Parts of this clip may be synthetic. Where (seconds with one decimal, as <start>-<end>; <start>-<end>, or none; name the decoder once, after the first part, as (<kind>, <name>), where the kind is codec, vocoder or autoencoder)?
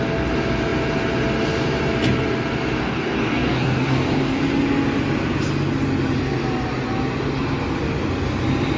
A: 2.8-4.4 (codec, DAC)